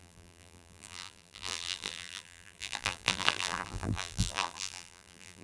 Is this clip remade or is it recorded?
remade